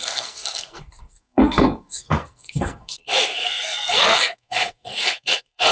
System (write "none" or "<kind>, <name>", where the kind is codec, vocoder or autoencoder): codec, SNAC